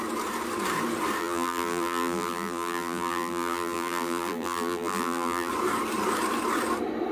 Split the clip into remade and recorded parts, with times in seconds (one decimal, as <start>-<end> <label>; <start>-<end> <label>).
0.0-1.2 recorded; 1.2-5.5 remade; 5.5-7.1 recorded